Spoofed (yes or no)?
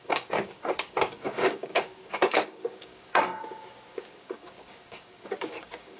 yes